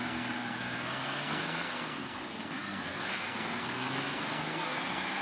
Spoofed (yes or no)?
yes